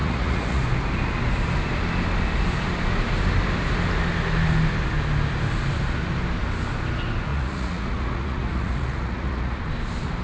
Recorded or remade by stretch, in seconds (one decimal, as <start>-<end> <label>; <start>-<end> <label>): 0.0-0.6 remade; 0.6-7.3 recorded; 7.3-9.6 remade; 9.6-10.2 recorded